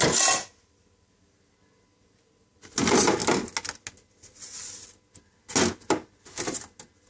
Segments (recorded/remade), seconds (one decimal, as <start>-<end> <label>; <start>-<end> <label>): 0.0-7.1 recorded